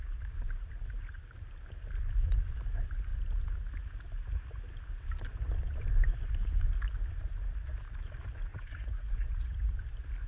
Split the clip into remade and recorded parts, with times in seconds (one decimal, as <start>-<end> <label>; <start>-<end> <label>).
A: 0.0-8.5 recorded; 8.5-9.7 remade; 9.7-10.3 recorded